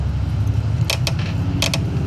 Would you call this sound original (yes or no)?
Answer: yes